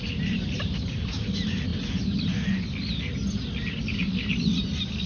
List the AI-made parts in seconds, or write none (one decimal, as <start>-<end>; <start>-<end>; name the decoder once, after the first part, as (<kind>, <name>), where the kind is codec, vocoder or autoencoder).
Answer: 0.0-1.7 (vocoder, BigVGAN v2)